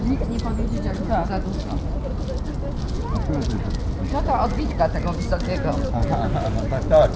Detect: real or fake real